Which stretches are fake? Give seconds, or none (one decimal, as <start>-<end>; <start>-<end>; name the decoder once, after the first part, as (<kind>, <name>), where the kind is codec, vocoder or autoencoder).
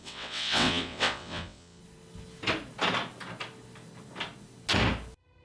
0.0-1.8 (vocoder, WaveNeXt)